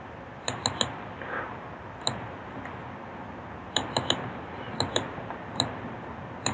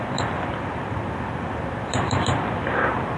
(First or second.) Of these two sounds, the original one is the first